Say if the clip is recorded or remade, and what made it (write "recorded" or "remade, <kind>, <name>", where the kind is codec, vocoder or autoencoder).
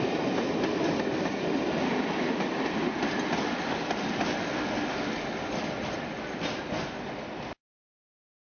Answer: recorded